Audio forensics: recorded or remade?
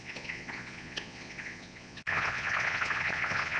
remade